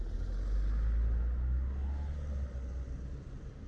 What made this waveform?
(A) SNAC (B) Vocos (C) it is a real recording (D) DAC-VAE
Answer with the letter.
C